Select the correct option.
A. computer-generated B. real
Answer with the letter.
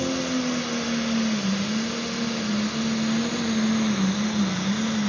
B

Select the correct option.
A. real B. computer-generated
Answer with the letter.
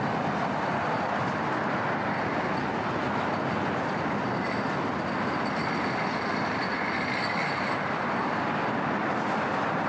A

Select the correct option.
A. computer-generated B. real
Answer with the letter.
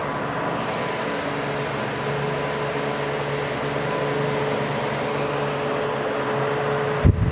B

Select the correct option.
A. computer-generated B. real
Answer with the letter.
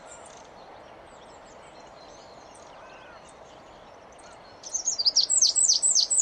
A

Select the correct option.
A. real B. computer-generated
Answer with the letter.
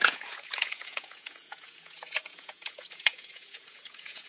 B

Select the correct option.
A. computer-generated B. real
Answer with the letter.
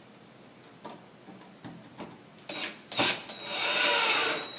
B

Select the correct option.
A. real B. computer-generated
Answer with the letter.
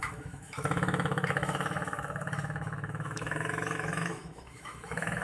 B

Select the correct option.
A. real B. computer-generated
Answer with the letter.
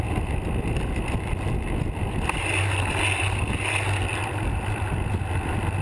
A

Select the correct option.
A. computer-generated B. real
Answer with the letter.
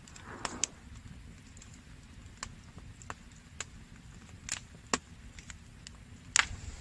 B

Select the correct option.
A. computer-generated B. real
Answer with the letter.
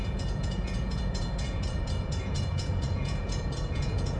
A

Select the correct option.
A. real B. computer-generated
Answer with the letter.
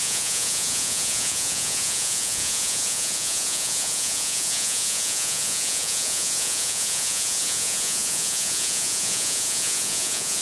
B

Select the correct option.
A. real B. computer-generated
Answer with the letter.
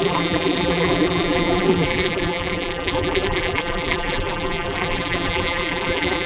B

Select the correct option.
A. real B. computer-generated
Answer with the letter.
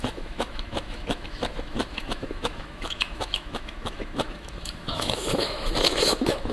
B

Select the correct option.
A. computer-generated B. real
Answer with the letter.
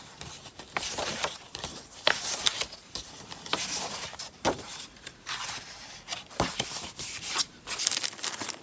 A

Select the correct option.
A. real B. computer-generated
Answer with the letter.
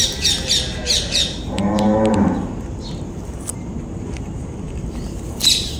B